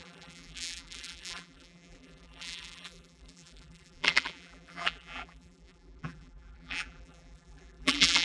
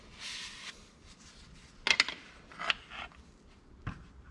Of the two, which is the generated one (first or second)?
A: first